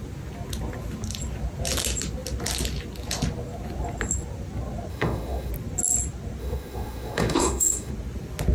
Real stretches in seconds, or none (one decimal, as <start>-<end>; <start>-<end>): 0.0-4.9; 5.5-6.4; 7.9-8.5